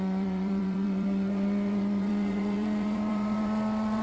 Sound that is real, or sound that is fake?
fake